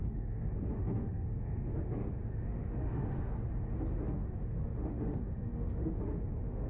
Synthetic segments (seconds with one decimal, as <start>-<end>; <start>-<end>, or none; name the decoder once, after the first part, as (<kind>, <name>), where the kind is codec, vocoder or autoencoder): 0.0-3.3 (autoencoder, DAC-VAE); 3.9-6.7